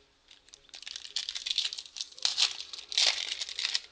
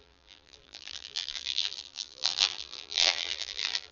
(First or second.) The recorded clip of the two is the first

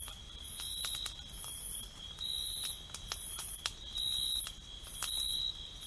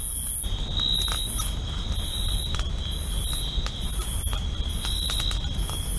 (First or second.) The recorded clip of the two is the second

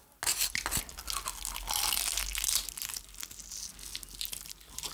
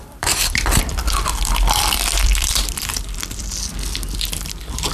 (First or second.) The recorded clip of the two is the first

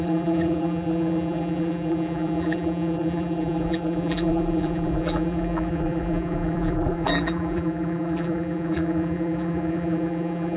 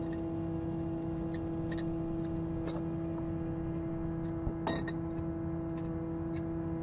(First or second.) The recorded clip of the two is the second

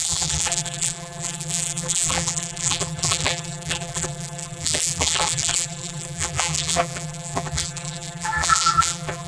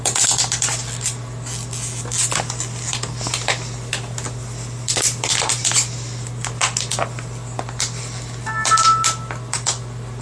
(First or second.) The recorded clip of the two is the second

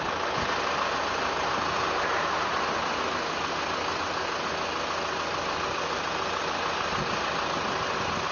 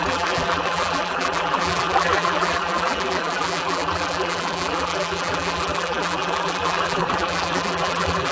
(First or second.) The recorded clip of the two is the first